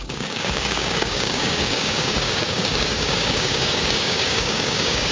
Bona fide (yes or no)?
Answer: no